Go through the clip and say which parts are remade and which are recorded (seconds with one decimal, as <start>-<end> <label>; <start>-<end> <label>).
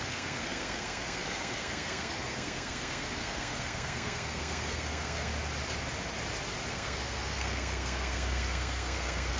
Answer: 0.0-5.3 remade; 5.3-6.7 recorded; 6.7-9.4 remade